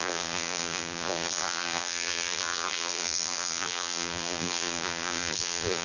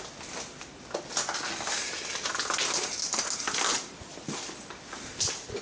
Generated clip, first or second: first